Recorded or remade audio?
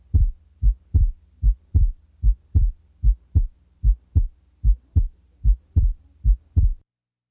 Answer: recorded